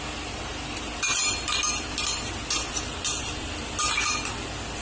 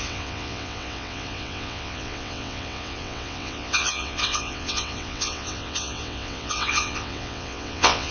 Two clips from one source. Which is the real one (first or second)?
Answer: first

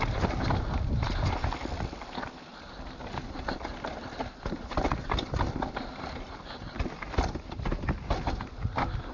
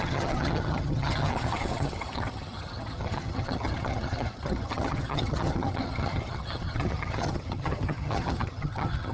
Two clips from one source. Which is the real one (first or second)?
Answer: first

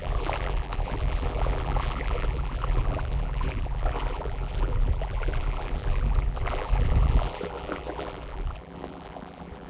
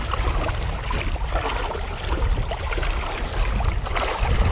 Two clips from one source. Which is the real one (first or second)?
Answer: second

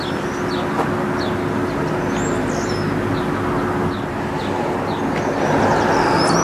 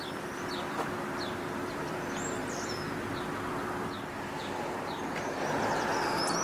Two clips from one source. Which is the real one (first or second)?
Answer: first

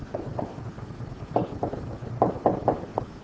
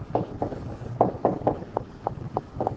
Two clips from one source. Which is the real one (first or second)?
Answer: first